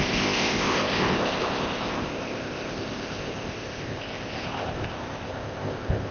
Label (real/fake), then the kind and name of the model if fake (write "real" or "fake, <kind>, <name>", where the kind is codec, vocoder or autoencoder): fake, codec, ZipCodec